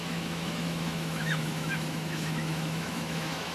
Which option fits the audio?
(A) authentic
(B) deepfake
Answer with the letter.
B